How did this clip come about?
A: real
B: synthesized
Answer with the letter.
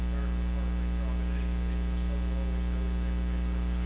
A